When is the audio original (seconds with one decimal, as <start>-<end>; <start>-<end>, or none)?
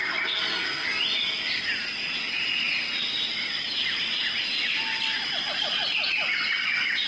0.0-0.5; 1.0-7.1